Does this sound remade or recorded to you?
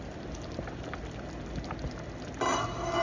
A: recorded